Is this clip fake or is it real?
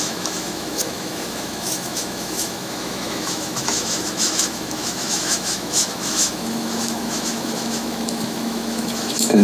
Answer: fake